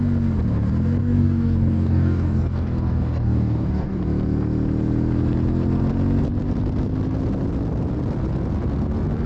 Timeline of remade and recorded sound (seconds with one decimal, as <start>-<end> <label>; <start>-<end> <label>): 0.0-1.0 recorded; 1.0-4.0 remade; 4.0-9.3 recorded